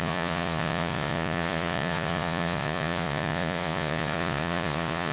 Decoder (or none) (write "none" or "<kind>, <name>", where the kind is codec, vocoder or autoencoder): vocoder, Vocos